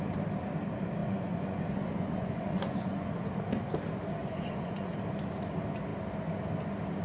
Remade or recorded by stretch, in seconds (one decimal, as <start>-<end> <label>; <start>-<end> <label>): 0.0-1.0 recorded; 1.0-3.1 remade; 3.1-4.2 recorded; 4.2-4.9 remade; 4.9-7.0 recorded